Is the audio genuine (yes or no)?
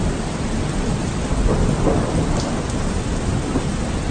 yes